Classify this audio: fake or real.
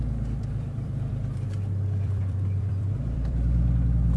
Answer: fake